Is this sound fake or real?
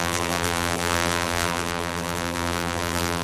fake